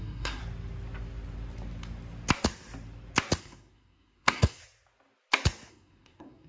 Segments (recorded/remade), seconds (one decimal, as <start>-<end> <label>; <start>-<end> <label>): 0.0-0.4 remade; 0.4-3.4 recorded; 3.4-4.6 remade; 4.6-5.7 recorded; 5.7-6.5 remade